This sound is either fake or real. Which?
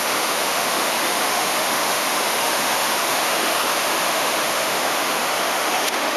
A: fake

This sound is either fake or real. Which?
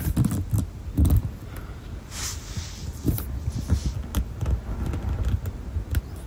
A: real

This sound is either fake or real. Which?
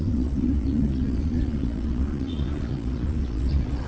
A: fake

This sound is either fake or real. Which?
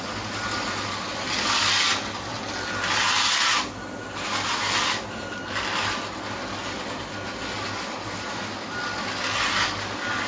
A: real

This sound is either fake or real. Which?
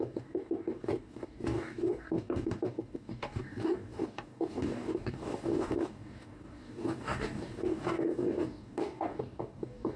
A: fake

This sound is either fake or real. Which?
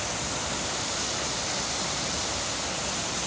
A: real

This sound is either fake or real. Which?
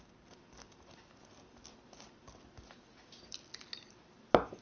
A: real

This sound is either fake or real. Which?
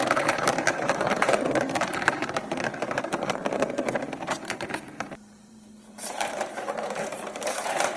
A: fake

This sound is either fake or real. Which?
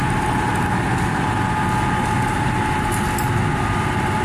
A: real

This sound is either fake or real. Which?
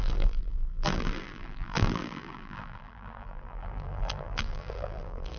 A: fake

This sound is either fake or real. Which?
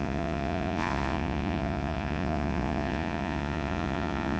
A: fake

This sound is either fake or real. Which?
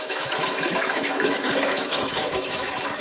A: fake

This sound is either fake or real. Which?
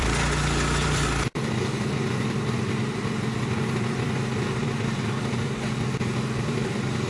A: fake